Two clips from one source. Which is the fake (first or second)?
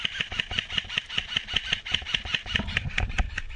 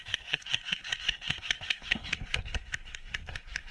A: second